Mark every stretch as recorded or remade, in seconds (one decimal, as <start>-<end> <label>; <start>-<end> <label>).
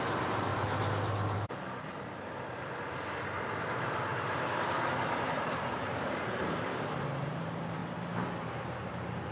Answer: 0.0-0.5 remade; 0.5-3.6 recorded; 3.6-7.8 remade; 7.8-8.8 recorded; 8.8-9.3 remade